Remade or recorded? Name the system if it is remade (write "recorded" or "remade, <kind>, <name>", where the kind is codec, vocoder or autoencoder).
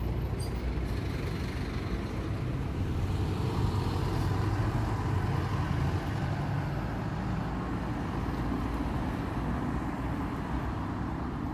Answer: recorded